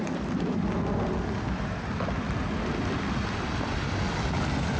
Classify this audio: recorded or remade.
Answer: recorded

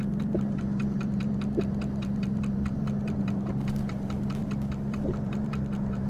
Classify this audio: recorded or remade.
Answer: remade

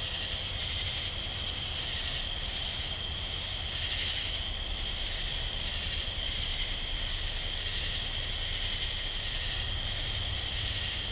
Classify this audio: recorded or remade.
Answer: recorded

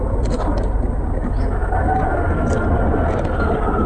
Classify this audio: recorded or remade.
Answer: recorded